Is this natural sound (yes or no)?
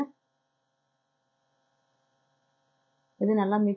no